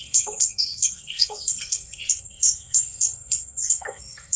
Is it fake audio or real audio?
fake